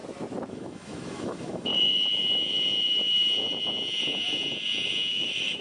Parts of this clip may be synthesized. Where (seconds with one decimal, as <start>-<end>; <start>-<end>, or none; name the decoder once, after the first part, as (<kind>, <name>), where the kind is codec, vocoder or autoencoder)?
0.5-1.7 (autoencoder, DAC-VAE); 5.1-5.6